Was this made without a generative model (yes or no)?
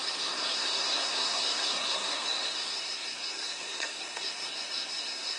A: no